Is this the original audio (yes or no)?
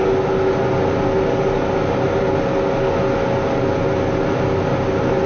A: yes